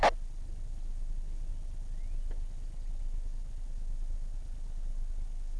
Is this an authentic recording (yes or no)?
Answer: yes